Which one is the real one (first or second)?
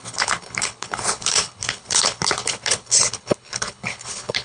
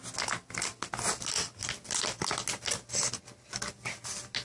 second